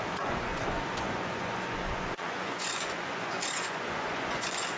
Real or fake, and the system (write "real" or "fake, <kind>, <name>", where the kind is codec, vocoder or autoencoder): fake, vocoder, Vocos